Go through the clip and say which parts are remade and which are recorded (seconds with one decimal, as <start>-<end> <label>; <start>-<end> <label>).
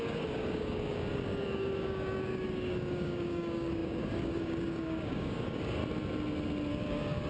0.0-5.8 remade; 5.8-6.7 recorded; 6.7-7.3 remade